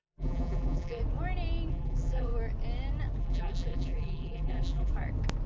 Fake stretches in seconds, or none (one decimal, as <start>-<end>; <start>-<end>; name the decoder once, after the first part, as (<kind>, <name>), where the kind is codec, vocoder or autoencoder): 0.0-1.0 (vocoder, BigVGAN v2); 1.7-2.3; 3.2-4.9